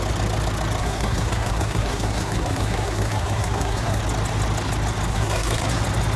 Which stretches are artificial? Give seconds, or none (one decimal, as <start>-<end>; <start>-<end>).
0.8-4.0; 5.1-5.8

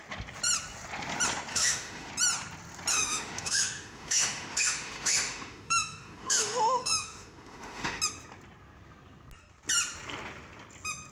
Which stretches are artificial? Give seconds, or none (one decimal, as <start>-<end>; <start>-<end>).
1.5-2.1; 2.9-8.0